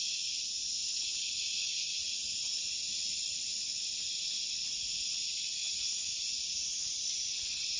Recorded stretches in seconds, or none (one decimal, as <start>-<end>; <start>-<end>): 0.0-0.8; 2.7-5.6; 7.1-7.8